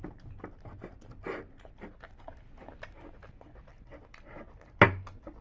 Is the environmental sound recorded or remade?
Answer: recorded